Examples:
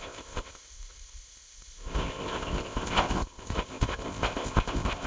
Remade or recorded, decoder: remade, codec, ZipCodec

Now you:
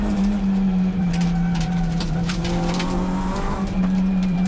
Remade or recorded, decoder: remade, vocoder, BigVGAN v2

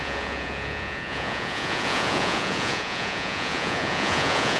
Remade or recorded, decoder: remade, vocoder, Vocos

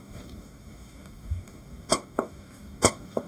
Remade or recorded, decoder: remade, codec, DAC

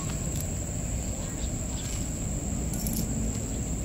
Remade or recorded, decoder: recorded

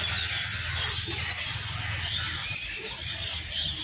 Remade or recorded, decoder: recorded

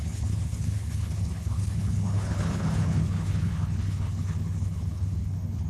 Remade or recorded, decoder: remade, codec, HILCodec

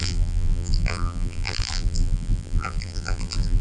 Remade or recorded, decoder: remade, vocoder, BigVGAN v2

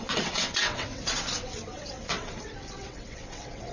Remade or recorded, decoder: remade, vocoder, WaveNeXt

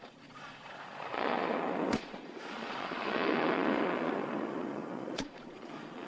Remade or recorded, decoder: remade, vocoder, Vocos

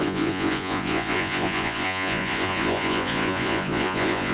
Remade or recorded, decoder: remade, vocoder, Vocos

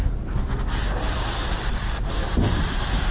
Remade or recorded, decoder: recorded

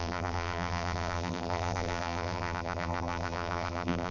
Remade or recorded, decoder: remade, vocoder, BigVGAN v2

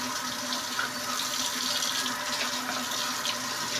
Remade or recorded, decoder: recorded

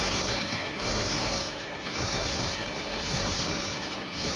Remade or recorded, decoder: remade, codec, SNAC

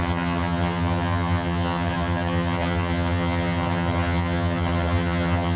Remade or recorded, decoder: remade, vocoder, HiFi-GAN